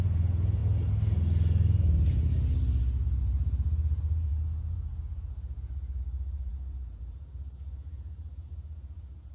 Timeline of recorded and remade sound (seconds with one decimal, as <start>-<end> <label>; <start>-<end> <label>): 0.0-0.6 remade; 0.6-3.2 recorded; 3.2-9.3 remade